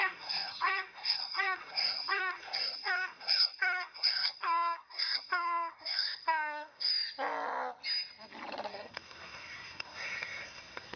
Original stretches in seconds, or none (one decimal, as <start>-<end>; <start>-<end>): 6.9-8.7

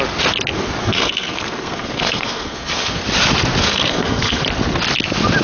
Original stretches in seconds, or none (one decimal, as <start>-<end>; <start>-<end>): 0.0-0.8; 3.0-3.6; 4.4-5.4